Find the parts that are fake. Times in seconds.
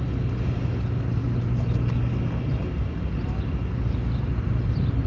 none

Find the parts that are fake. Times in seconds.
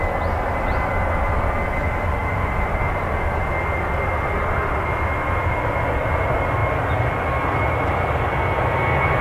none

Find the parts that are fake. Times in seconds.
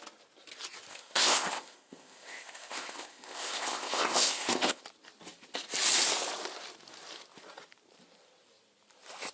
0.9-4.8 (codec, ZipCodec)